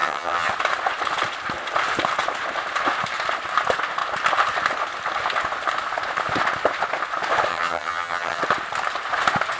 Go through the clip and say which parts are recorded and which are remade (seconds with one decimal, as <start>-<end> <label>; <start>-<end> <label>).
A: 0.0-0.5 remade; 0.5-7.5 recorded; 7.5-8.4 remade; 8.4-9.6 recorded